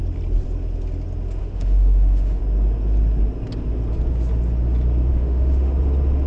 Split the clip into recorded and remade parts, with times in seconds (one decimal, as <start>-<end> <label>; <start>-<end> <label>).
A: 0.0-1.4 recorded; 1.4-2.4 remade; 2.4-5.1 recorded; 5.1-5.7 remade; 5.7-6.3 recorded